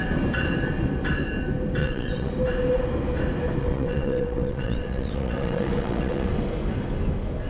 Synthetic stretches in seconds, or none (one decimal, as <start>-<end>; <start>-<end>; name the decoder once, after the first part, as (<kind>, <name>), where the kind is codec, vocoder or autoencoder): 1.8-2.3 (vocoder, WaveNeXt); 3.6-6.3